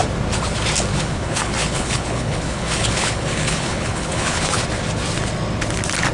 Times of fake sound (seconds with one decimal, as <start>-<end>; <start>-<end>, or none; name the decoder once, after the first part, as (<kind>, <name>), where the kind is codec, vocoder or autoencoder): 0.9-4.6 (codec, HILCodec)

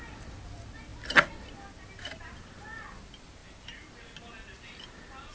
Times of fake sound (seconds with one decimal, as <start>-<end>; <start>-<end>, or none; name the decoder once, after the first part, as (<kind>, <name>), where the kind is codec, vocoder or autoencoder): none

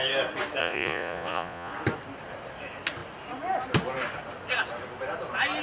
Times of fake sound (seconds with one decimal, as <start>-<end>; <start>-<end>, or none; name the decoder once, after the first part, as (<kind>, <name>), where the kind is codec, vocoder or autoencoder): 0.6-1.7 (vocoder, Vocos)

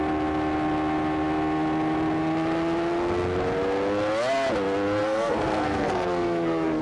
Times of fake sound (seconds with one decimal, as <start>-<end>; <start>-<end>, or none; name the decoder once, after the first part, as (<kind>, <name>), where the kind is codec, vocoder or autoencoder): 5.0-6.8 (codec, SNAC)